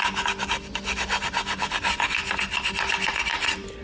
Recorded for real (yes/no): yes